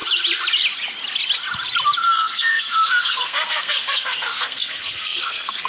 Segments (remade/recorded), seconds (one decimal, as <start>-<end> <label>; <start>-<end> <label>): 0.0-2.0 recorded; 2.0-5.7 remade